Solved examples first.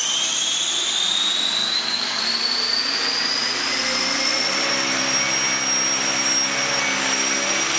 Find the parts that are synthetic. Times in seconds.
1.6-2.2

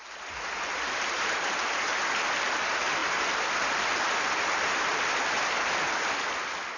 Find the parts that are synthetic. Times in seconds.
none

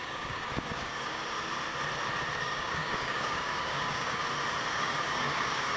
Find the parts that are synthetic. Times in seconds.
0.0-1.2; 2.4-4.2; 4.7-5.8

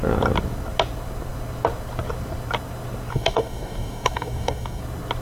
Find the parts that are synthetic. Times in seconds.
3.1-4.8

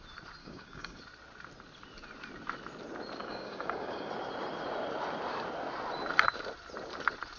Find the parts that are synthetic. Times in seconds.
0.4-1.0; 3.2-4.1